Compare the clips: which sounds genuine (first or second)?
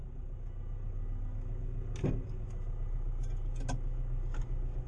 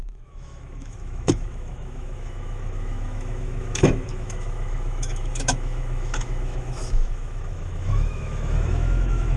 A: first